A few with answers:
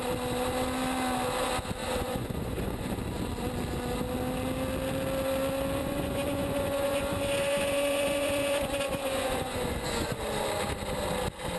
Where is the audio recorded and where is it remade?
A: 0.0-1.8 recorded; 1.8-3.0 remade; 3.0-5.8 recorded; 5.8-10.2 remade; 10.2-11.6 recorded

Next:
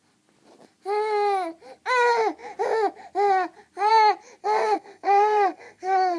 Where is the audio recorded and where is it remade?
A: 0.0-4.4 recorded; 4.4-6.2 remade

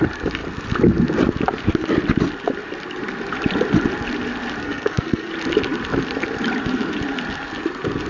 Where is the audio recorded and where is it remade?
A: 0.0-4.6 recorded; 4.6-5.3 remade; 5.3-8.1 recorded